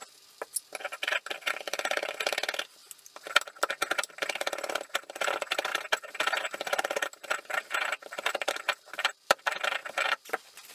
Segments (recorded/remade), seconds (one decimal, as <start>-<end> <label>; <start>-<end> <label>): 0.0-2.8 remade; 2.8-4.1 recorded; 4.1-10.7 remade